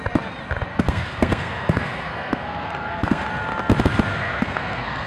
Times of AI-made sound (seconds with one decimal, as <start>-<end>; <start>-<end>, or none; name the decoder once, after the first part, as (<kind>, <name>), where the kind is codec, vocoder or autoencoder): 0.7-3.3 (codec, SNAC); 4.1-5.1